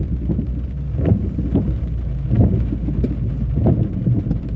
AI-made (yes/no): no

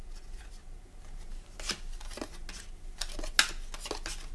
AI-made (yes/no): no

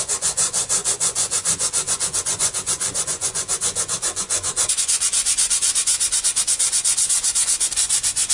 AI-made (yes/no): yes